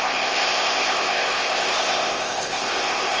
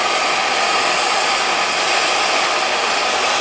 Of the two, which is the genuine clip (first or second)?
second